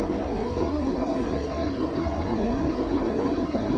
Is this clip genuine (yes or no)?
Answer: no